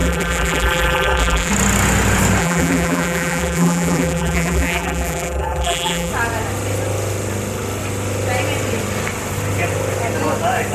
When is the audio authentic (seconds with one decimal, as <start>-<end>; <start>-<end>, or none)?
1.5-2.4; 6.1-10.7